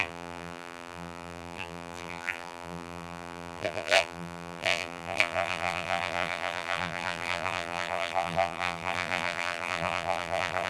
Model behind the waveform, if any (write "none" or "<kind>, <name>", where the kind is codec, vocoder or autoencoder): vocoder, BigVGAN v2